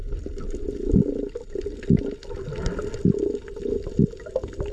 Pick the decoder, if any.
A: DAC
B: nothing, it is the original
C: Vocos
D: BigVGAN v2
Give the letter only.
B